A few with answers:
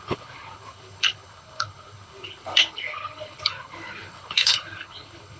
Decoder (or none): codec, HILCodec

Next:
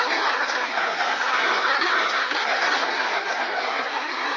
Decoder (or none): codec, SNAC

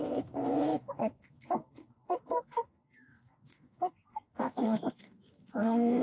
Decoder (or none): codec, SNAC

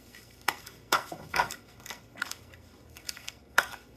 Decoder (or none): codec, SNAC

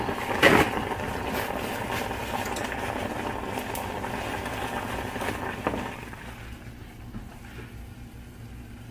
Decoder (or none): none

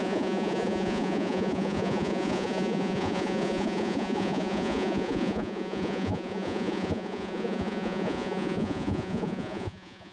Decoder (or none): vocoder, Vocos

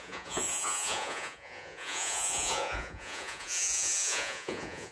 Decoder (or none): vocoder, Vocos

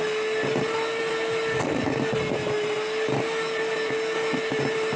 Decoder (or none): none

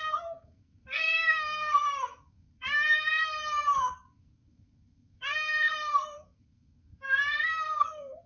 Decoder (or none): codec, SNAC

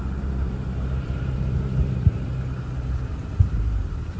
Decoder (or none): vocoder, BigVGAN v2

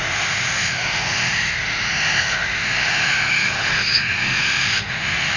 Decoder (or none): autoencoder, DAC-VAE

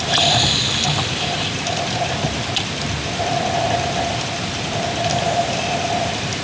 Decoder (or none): none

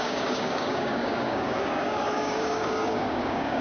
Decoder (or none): codec, DAC